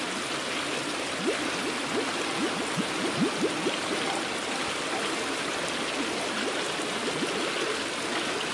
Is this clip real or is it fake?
real